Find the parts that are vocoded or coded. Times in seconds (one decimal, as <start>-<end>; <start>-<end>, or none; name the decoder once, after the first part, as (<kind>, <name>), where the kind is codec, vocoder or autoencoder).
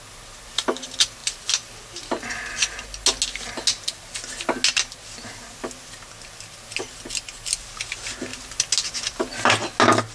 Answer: none